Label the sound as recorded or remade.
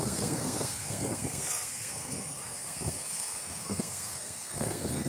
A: remade